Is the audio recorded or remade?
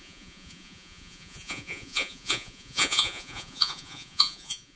remade